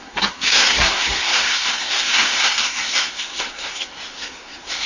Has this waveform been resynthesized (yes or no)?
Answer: yes